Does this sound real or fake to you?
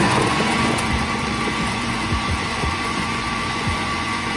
fake